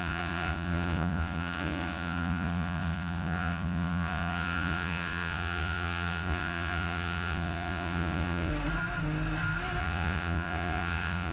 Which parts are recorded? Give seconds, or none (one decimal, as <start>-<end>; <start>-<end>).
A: 8.5-9.8

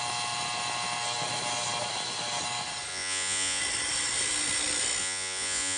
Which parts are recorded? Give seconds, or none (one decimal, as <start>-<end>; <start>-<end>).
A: 0.0-2.9; 3.6-5.0